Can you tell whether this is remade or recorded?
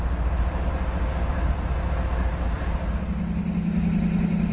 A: recorded